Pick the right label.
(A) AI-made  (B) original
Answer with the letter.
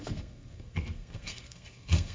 A